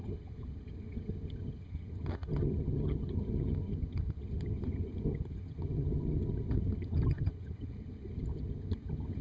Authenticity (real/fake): fake